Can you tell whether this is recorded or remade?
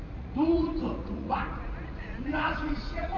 remade